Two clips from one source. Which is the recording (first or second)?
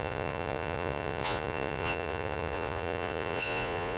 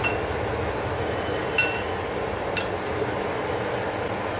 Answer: second